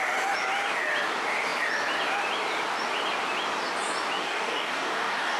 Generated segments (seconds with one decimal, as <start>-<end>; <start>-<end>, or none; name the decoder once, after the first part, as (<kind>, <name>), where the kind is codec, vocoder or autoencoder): 4.2-5.4 (codec, DAC)